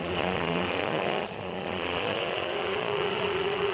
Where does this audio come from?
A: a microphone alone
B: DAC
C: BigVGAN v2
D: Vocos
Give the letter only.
D